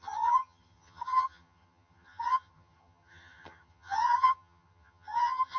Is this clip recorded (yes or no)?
no